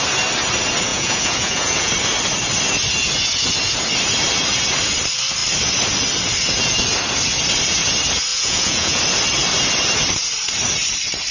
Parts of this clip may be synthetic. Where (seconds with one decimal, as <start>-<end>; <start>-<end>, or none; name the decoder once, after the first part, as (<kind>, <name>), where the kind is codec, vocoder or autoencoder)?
0.9-1.9 (vocoder, Vocos); 8.3-9.0